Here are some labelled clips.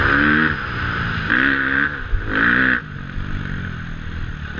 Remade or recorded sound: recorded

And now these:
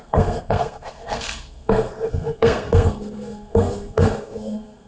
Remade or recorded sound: remade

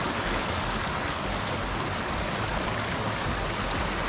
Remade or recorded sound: recorded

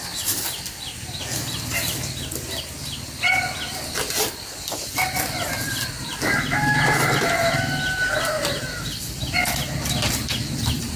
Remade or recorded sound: recorded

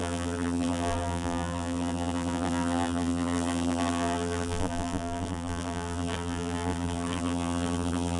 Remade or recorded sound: remade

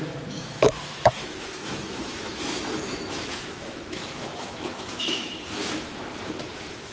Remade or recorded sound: remade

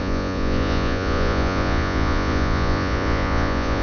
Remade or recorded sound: remade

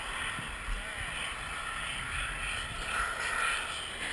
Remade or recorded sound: recorded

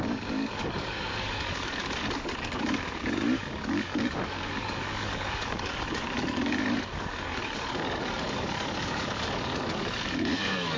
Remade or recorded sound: remade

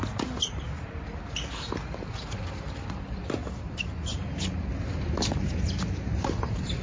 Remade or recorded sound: recorded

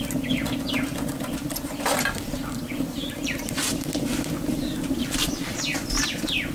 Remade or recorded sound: remade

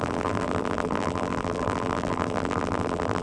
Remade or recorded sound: remade